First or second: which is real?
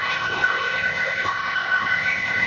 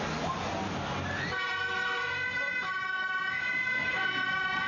second